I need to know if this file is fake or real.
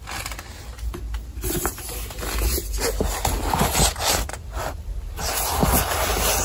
real